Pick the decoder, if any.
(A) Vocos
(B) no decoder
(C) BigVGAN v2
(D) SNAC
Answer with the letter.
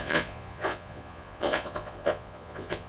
A